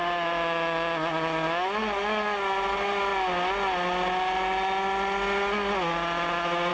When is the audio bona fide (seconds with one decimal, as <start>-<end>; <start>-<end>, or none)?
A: 0.0-6.7

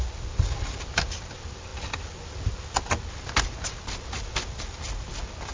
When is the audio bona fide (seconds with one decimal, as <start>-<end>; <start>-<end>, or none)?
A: 0.0-5.5

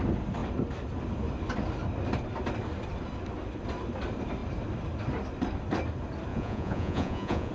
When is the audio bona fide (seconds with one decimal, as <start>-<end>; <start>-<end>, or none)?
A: 0.0-6.3

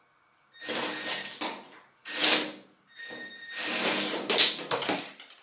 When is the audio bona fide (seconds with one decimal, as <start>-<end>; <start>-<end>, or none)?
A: 0.0-5.4

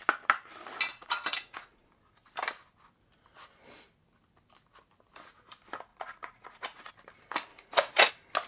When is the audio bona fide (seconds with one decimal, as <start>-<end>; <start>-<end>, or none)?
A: 0.0-0.9; 1.9-5.9; 6.9-7.5; 8.1-8.5